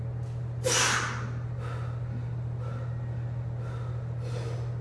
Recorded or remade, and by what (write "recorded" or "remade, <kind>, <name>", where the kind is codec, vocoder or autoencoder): recorded